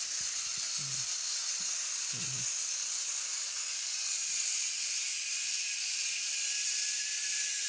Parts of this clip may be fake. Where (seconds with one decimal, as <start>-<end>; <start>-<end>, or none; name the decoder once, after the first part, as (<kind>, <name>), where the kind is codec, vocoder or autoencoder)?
none